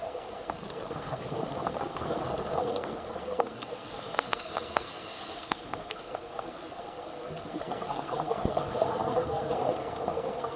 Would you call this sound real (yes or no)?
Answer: no